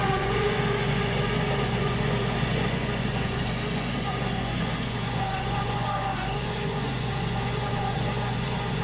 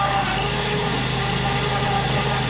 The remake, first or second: first